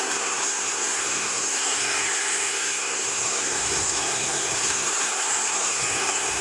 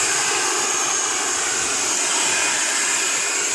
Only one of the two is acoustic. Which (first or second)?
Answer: second